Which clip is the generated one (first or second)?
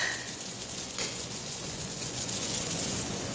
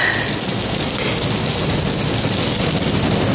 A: first